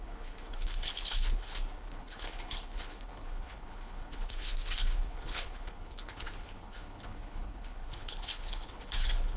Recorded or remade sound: remade